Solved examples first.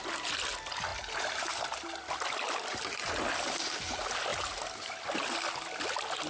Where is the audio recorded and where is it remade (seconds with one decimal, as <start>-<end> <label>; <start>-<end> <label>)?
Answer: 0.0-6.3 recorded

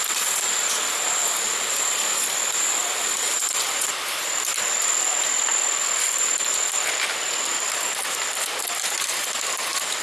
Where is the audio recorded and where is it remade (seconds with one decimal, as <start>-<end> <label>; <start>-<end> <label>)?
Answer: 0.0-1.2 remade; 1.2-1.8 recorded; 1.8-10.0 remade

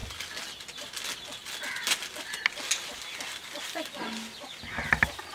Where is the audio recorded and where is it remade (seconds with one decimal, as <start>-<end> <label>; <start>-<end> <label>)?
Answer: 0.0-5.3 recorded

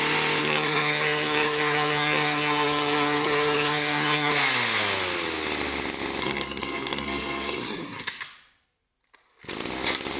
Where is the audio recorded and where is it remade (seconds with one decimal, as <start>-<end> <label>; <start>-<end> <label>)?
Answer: 0.0-0.4 recorded; 0.4-4.3 remade; 4.3-6.2 recorded; 6.2-8.2 remade; 8.2-10.2 recorded